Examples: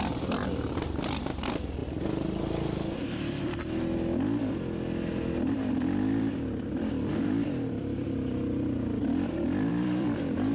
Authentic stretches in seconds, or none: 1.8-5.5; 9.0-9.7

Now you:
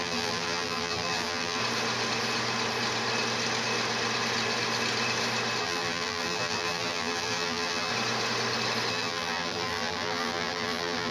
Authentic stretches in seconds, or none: 1.6-5.6; 7.9-8.9

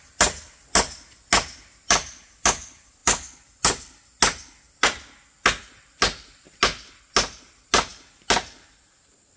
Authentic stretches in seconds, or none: 0.0-9.4

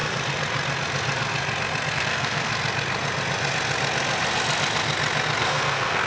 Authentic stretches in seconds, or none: 0.0-1.9; 2.5-5.4

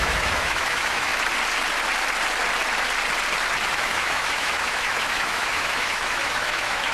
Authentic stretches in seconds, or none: 1.1-3.7

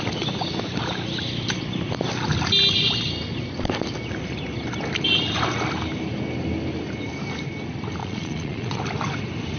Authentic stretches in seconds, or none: 0.0-8.0; 8.8-9.6

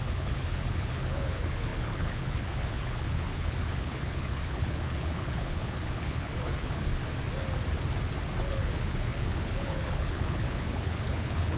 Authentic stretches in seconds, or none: 6.9-8.5